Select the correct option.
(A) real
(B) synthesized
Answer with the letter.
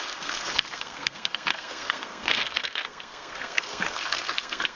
B